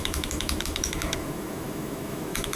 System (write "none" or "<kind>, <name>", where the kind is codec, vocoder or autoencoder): autoencoder, DAC-VAE